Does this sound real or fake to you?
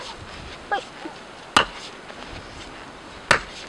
real